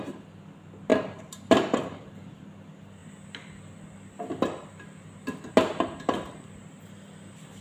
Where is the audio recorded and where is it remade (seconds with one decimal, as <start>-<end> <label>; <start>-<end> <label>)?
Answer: 0.0-0.9 recorded; 0.9-2.1 remade; 2.1-7.6 recorded